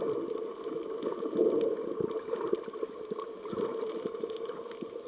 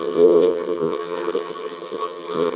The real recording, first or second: first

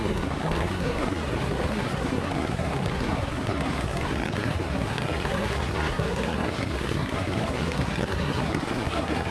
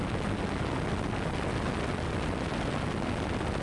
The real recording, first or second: second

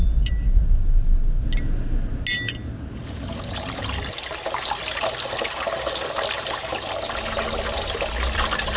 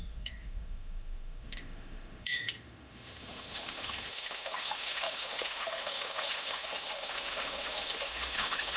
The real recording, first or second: first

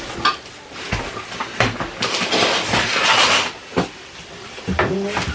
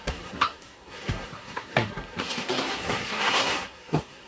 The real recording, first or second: first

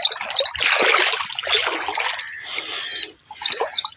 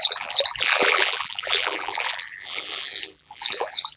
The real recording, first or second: first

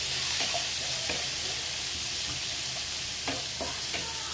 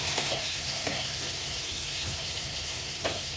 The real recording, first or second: first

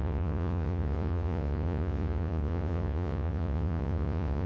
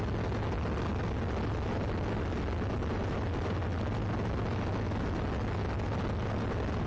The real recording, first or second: second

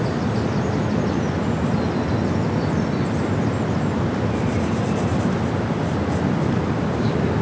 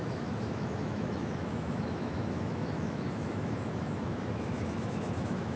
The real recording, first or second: first